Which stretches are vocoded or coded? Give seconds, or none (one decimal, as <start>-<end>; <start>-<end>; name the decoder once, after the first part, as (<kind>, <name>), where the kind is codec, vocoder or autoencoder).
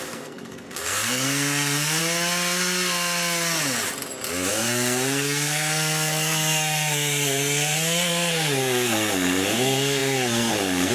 0.0-2.0 (codec, SNAC); 4.5-10.9